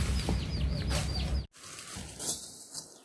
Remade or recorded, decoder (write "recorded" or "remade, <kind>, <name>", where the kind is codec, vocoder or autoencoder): recorded